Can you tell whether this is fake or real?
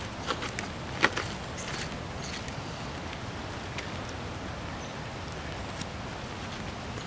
real